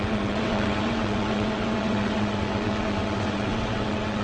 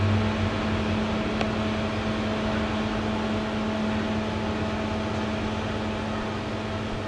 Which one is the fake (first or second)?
first